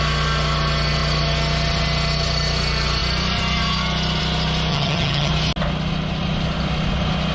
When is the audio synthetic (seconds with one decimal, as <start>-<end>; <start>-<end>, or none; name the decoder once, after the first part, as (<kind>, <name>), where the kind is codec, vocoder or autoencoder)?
4.7-5.3 (vocoder, HiFi-GAN)